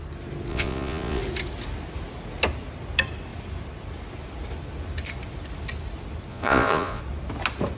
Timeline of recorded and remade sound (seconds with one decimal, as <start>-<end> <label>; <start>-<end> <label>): 0.0-0.5 recorded; 0.5-1.2 remade; 1.2-6.3 recorded; 6.3-7.0 remade; 7.0-7.8 recorded